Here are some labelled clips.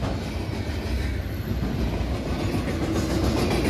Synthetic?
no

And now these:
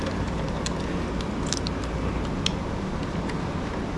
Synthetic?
no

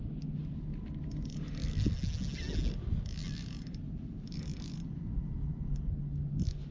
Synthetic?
no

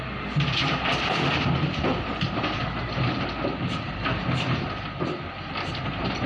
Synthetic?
yes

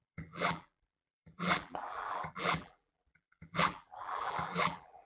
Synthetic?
yes